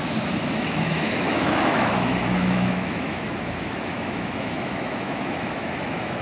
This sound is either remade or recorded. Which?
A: remade